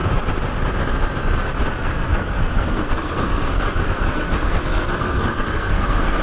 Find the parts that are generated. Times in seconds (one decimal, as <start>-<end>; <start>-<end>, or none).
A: 1.8-6.2

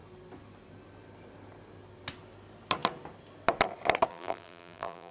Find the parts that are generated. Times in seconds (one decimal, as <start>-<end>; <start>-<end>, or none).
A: 4.1-5.1

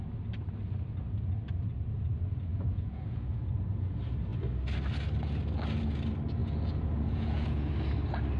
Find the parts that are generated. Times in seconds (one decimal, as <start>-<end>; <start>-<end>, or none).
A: 2.5-3.5; 6.4-7.7

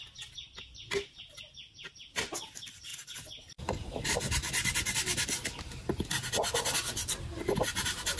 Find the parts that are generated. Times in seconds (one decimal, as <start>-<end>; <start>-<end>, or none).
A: none

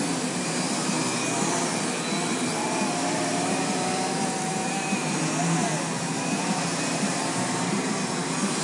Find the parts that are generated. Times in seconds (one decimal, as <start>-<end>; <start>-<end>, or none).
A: 0.0-1.0; 2.3-8.6

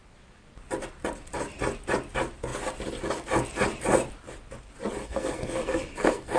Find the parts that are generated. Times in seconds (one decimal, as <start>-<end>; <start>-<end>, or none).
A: 5.0-6.4

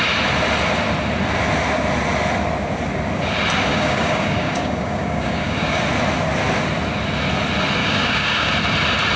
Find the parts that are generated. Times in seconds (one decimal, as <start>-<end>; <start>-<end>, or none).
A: 3.7-5.8; 7.8-8.5